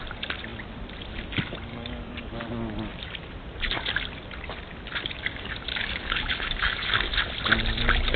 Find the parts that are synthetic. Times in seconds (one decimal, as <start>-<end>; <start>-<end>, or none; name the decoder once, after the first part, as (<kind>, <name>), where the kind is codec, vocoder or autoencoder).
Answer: 1.7-2.3 (codec, DAC); 5.7-7.1